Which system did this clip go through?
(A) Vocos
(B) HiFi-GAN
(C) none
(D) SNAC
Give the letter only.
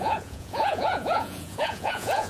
A